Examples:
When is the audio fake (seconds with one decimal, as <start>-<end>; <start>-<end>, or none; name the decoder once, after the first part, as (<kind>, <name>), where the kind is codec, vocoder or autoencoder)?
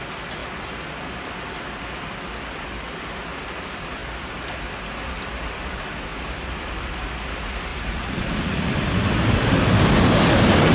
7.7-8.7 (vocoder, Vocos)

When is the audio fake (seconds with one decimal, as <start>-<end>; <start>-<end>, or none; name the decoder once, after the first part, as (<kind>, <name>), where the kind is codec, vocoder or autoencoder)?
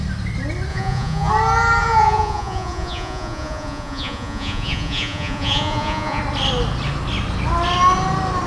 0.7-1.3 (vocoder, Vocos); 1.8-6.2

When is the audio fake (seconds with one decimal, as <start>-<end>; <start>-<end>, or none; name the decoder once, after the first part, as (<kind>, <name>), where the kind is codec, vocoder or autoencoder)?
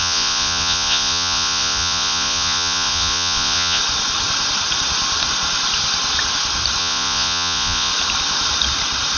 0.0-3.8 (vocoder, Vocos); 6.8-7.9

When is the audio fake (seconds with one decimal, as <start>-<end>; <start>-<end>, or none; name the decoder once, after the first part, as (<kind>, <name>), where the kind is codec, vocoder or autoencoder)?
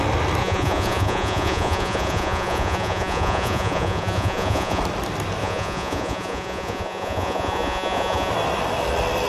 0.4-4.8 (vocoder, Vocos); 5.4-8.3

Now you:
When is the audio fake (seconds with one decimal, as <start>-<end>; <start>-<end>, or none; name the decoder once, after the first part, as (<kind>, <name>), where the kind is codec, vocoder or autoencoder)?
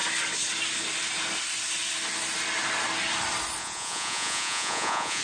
3.6-5.2 (vocoder, Vocos)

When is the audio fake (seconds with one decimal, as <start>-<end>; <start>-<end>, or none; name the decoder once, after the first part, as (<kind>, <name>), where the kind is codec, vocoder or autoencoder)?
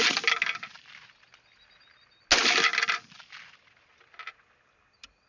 none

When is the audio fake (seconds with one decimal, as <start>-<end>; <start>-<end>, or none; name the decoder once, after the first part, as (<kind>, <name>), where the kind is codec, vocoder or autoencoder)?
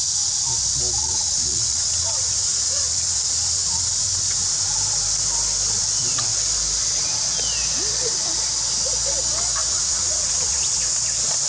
1.0-3.8 (vocoder, Vocos); 9.6-10.9